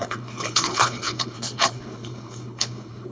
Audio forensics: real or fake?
fake